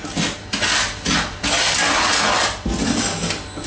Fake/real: real